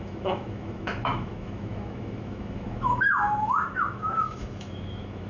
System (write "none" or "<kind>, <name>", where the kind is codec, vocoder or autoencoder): autoencoder, DAC-VAE